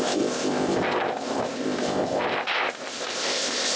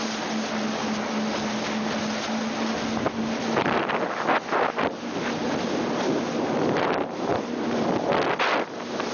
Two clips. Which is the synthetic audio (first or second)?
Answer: first